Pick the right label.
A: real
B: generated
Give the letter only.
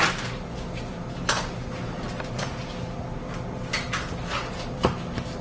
A